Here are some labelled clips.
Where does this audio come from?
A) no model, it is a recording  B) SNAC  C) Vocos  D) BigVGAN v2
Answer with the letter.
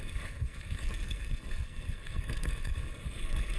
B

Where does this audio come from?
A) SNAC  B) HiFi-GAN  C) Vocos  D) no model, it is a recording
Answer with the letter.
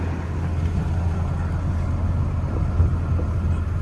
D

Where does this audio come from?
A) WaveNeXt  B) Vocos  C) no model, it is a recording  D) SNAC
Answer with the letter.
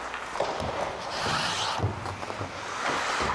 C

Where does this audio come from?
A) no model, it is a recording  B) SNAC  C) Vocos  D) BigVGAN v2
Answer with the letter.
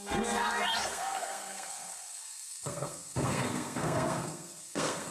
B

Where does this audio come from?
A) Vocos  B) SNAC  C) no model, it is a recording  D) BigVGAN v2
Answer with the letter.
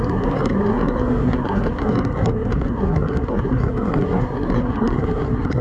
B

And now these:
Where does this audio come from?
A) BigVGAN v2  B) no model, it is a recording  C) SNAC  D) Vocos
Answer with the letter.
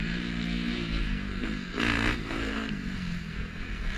C